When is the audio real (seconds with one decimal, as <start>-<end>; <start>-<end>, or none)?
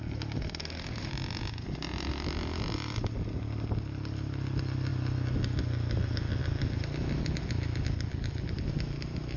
0.0-0.6; 1.1-9.4